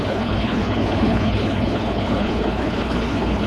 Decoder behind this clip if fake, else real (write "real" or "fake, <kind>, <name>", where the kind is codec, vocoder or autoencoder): fake, codec, HILCodec